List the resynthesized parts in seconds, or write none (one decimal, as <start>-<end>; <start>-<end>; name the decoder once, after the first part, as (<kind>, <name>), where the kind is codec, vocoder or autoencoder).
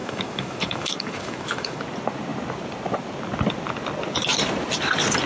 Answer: 0.0-1.8 (autoencoder, DAC-VAE)